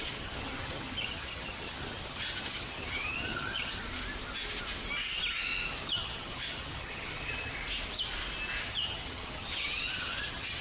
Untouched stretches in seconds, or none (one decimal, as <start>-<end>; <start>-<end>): 3.8-5.7; 7.5-8.6